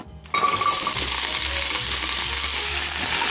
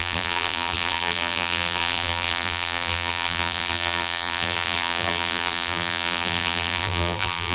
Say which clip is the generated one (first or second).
second